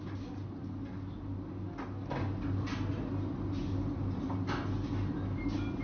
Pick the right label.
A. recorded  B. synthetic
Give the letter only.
A